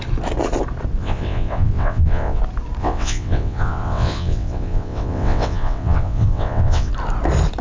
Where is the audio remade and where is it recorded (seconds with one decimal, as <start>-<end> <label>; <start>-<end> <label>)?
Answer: 0.0-1.0 recorded; 1.0-2.4 remade; 2.4-2.8 recorded; 2.8-6.9 remade; 6.9-7.6 recorded